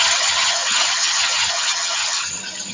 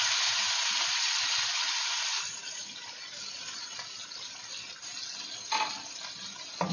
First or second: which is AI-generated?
first